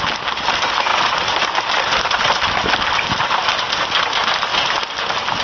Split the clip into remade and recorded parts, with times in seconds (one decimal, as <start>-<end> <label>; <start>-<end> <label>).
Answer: 0.0-5.4 recorded